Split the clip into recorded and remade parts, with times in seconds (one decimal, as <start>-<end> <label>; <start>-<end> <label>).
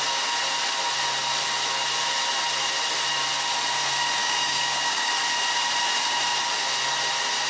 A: 0.0-4.2 recorded; 4.2-5.1 remade; 5.1-7.5 recorded